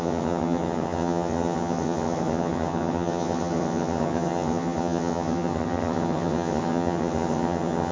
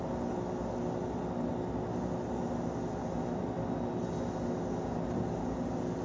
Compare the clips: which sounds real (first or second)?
second